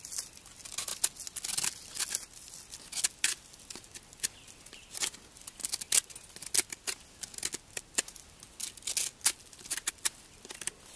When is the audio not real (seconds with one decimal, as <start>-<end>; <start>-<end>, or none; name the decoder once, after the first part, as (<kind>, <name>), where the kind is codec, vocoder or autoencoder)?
none